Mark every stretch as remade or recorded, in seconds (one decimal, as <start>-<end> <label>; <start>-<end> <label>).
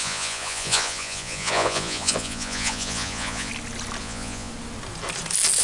0.0-3.5 remade; 3.5-4.0 recorded; 4.0-4.5 remade; 4.5-5.6 recorded